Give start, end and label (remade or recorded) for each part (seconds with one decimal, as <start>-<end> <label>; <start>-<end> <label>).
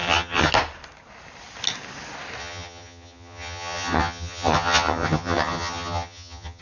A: 0.0-0.5 remade; 0.5-2.4 recorded; 2.4-6.6 remade